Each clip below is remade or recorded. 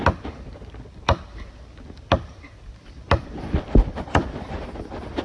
recorded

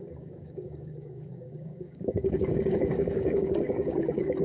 remade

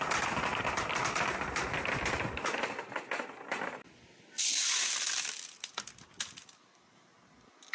recorded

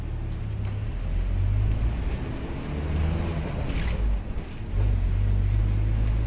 recorded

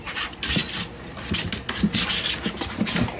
recorded